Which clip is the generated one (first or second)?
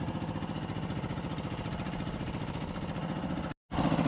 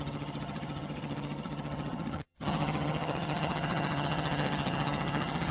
second